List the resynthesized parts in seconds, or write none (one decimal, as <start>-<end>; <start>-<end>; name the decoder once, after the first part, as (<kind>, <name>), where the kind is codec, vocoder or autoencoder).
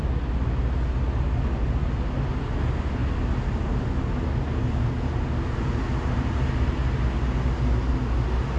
none